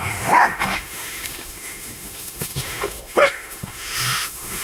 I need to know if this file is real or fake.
fake